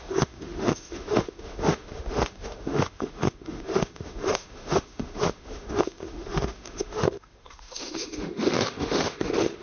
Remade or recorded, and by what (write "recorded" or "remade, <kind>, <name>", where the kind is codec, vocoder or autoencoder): remade, autoencoder, DAC-VAE